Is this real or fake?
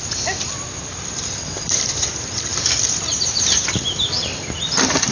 real